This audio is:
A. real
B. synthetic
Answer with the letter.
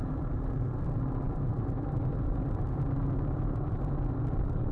A